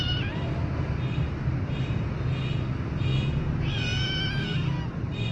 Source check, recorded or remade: recorded